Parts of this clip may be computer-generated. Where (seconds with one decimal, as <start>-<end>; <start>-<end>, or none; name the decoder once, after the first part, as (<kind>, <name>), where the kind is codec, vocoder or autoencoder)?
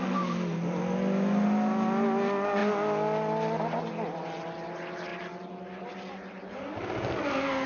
none